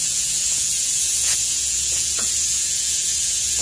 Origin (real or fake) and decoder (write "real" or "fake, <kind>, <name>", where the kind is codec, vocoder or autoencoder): fake, vocoder, Vocos